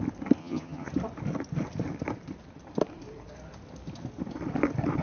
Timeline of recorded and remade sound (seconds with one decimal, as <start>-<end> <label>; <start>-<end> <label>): 0.0-0.4 recorded; 0.4-0.9 remade; 0.9-5.0 recorded